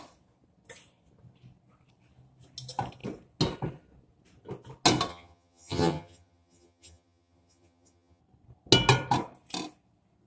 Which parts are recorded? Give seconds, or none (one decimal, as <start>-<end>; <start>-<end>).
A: 0.0-5.1; 8.2-10.3